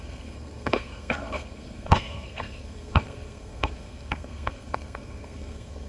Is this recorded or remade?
remade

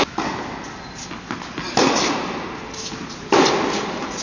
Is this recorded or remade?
recorded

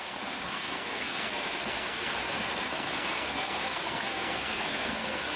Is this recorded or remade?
remade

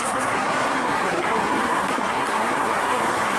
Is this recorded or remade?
remade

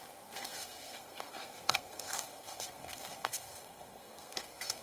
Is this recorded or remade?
remade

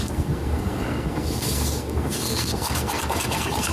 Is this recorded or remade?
remade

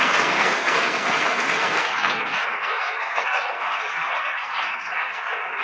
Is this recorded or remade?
remade